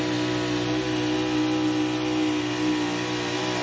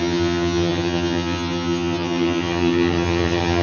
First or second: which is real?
first